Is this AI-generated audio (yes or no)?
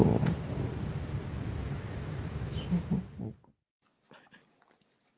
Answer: no